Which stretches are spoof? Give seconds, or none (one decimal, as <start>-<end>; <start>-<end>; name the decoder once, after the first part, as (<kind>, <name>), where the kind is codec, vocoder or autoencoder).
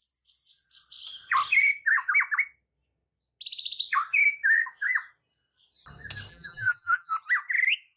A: 6.3-7.1 (vocoder, BigVGAN v2)